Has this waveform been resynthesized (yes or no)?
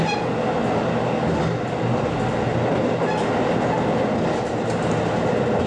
no